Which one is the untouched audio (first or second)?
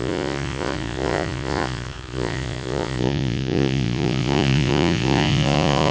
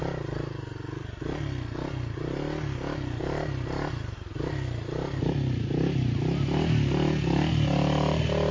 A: second